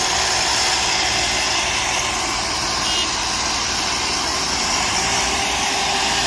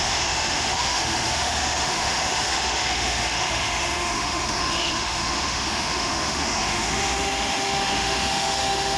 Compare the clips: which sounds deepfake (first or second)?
second